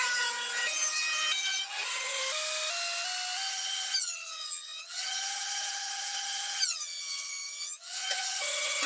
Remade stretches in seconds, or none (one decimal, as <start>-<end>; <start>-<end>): 0.0-2.2; 3.5-8.9